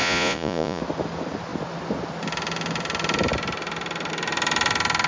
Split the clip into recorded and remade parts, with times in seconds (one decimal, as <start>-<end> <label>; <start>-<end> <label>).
0.0-0.8 remade; 0.8-5.1 recorded